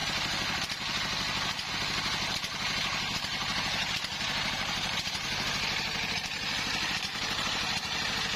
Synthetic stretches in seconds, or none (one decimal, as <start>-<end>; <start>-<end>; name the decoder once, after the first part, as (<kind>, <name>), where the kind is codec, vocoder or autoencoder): 2.9-6.5 (vocoder, BigVGAN v2); 7.1-8.0